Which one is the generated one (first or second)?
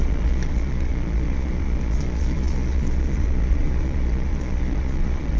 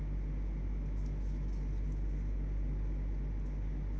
first